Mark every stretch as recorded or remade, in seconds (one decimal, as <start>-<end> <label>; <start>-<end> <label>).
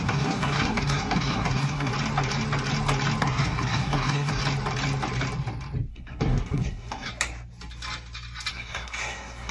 0.0-1.9 remade; 1.9-3.2 recorded; 3.2-4.4 remade; 4.4-5.9 recorded; 5.9-7.1 remade; 7.1-8.5 recorded; 8.5-9.5 remade